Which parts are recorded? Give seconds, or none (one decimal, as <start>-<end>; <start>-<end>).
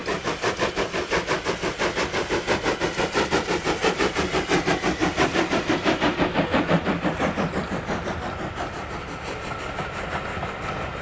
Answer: 0.0-5.0; 10.2-11.0